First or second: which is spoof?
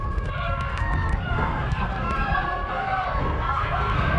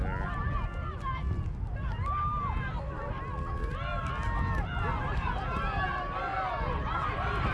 first